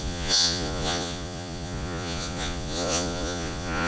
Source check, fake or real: fake